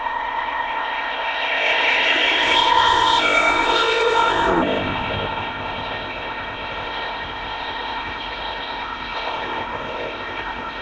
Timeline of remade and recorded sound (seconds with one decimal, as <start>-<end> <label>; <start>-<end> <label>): 0.0-10.8 remade